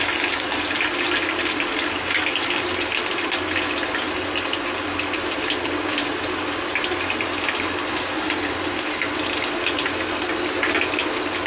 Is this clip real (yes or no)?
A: yes